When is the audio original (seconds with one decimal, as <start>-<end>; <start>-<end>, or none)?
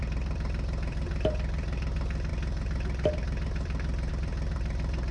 none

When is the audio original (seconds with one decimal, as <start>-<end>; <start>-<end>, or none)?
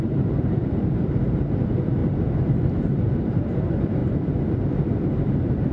4.0-5.1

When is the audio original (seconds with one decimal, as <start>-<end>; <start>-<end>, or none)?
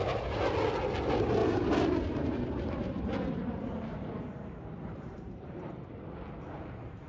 0.0-1.4; 5.7-7.1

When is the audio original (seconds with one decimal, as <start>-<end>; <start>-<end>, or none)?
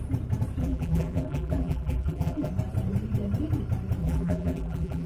0.0-0.6; 2.5-4.0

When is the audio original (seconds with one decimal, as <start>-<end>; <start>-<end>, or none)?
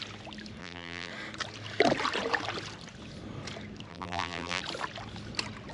0.0-0.6; 1.1-3.9; 4.6-5.7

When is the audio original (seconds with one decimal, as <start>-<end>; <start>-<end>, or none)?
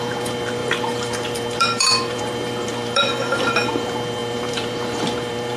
none